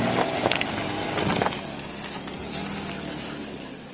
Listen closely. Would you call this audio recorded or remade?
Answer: recorded